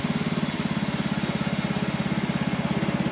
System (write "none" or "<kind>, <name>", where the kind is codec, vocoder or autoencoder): none